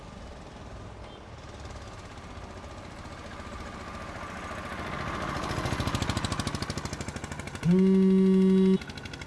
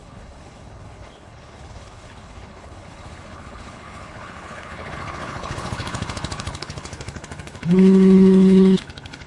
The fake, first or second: second